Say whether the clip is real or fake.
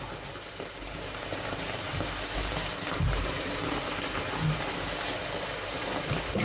fake